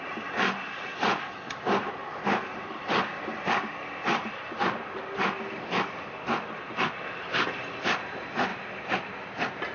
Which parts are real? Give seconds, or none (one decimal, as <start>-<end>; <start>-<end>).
0.0-2.0; 5.1-8.5; 9.1-9.7